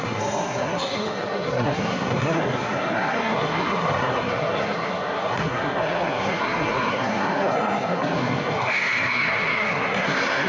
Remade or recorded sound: remade